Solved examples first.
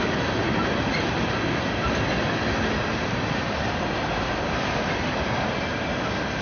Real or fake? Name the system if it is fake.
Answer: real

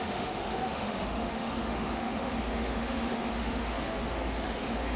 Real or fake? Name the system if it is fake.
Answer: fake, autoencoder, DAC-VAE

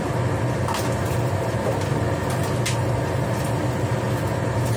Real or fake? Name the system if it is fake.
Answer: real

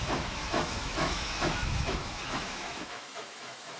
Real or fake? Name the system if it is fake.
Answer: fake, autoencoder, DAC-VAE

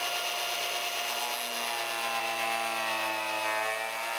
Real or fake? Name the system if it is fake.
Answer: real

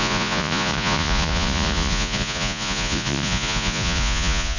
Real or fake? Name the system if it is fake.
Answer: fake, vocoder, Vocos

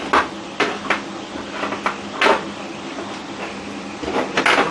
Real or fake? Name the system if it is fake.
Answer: real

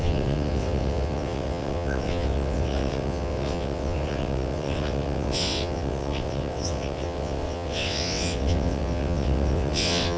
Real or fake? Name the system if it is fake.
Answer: fake, vocoder, WaveNeXt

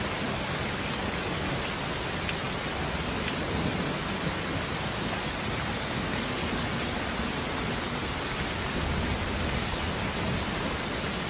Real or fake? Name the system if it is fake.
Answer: real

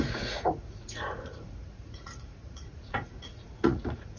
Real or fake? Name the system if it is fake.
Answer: fake, vocoder, Vocos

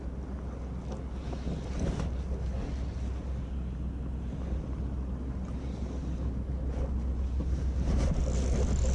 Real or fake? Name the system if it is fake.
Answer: real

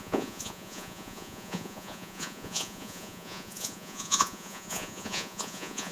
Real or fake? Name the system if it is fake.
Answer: fake, vocoder, Vocos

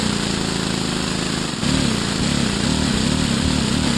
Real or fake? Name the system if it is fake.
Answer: fake, vocoder, BigVGAN v2